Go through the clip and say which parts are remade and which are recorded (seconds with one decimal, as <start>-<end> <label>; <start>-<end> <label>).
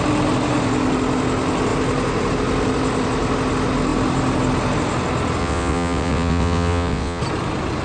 0.0-5.4 recorded; 5.4-7.2 remade; 7.2-7.8 recorded